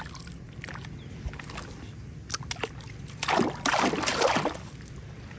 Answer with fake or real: real